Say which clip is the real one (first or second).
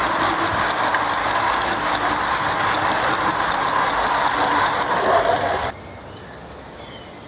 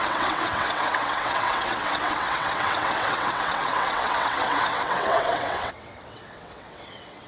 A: first